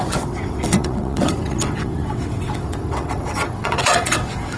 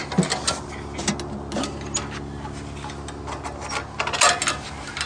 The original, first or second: second